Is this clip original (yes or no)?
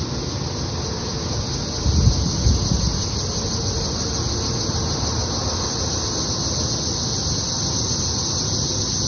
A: yes